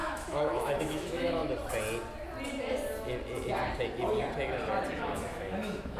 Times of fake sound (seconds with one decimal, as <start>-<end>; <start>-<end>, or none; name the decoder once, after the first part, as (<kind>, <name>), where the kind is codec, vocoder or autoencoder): 0.0-1.4 (autoencoder, DAC-VAE); 5.0-6.0